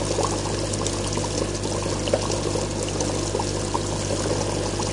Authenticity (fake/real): real